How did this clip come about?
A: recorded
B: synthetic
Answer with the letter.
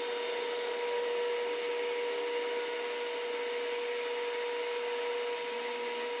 A